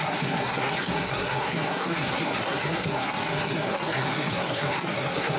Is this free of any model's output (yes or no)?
no